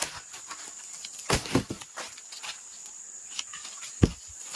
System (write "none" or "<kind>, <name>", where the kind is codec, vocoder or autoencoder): none